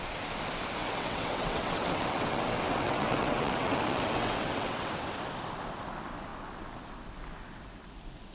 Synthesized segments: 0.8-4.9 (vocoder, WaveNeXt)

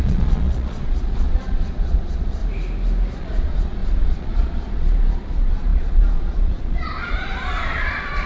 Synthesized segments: 0.0-2.4 (vocoder, Vocos); 3.2-8.3

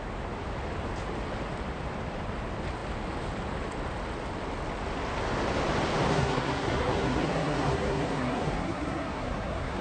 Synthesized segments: 6.1-9.8 (codec, SNAC)

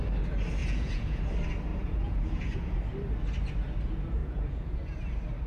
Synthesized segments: 0.6-1.2 (vocoder, Vocos); 1.7-2.8; 4.2-5.0

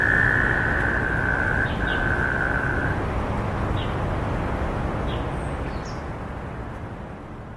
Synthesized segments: none

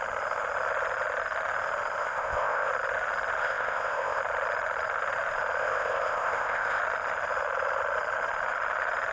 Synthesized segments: 2.0-2.7 (codec, ZipCodec); 3.4-4.2; 5.6-6.8

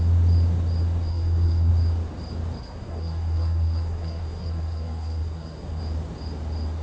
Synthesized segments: 1.1-1.7 (codec, SNAC); 2.6-5.8